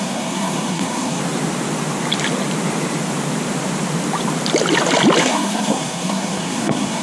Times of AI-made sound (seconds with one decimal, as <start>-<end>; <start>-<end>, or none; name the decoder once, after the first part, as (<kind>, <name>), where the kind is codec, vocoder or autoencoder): 0.0-1.2 (codec, SNAC); 5.2-7.0